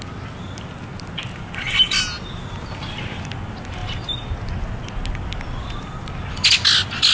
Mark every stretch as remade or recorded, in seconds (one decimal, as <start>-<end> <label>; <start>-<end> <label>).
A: 0.0-7.1 recorded

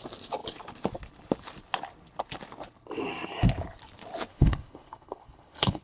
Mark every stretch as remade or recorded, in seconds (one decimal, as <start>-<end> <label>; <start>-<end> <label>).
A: 0.0-4.3 recorded; 4.3-5.8 remade

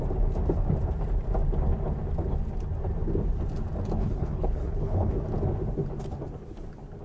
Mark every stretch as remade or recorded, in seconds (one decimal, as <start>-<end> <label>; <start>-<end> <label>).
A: 0.0-4.0 recorded; 4.0-5.1 remade; 5.1-7.0 recorded